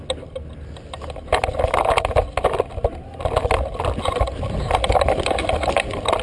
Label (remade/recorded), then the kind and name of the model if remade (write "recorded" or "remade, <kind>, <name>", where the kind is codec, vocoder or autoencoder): recorded